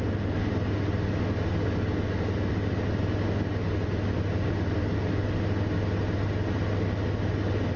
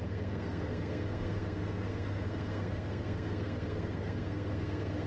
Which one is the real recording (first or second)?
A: first